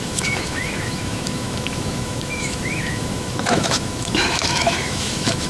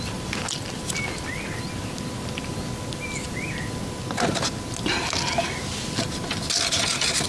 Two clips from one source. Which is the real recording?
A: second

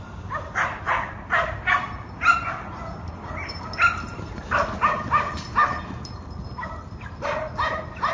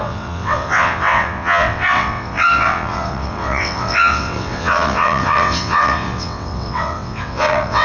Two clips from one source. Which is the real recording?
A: first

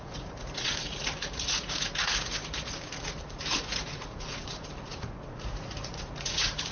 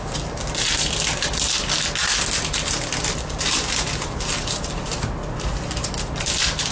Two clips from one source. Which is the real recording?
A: second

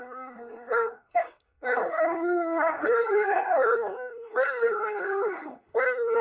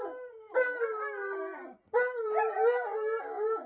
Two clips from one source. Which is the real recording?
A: second